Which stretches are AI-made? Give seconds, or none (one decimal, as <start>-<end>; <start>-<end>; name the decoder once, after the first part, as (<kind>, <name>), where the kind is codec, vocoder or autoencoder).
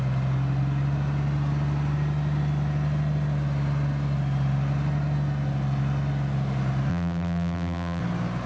6.9-8.0 (vocoder, BigVGAN v2)